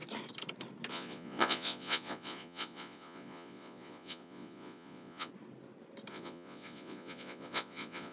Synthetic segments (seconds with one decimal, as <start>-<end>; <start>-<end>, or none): 0.9-5.3; 6.1-8.1